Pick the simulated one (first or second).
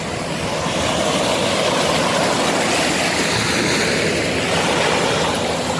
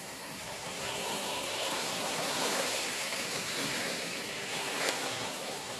second